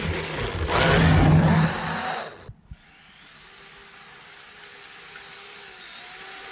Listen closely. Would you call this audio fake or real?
real